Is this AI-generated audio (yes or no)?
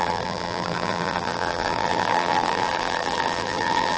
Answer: yes